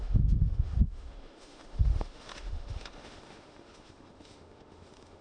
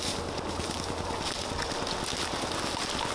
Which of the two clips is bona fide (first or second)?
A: second